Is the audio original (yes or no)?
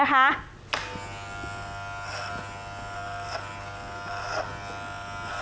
yes